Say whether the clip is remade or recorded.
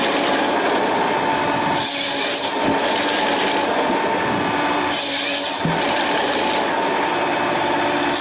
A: recorded